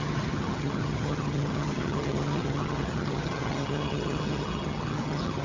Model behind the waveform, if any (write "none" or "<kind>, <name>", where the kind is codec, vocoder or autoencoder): vocoder, HiFi-GAN